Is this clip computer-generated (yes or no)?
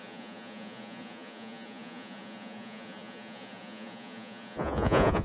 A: yes